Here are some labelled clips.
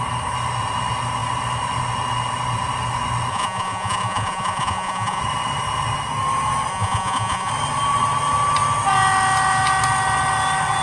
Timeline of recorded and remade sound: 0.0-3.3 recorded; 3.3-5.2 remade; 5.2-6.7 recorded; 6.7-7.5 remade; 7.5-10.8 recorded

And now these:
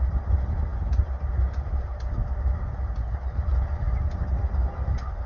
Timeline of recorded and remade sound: 0.0-5.3 recorded